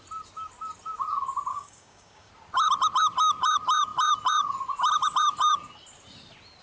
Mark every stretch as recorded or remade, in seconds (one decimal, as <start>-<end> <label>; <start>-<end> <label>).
0.0-1.5 recorded; 1.5-2.3 remade; 2.3-6.6 recorded

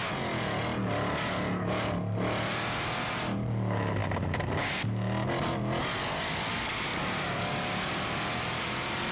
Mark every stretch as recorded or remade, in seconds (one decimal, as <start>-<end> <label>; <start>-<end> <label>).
0.0-9.1 recorded